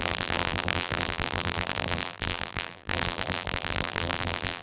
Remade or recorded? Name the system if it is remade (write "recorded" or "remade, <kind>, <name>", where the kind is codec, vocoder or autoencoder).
remade, vocoder, BigVGAN v2